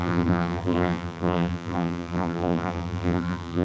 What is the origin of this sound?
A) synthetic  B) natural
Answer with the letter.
A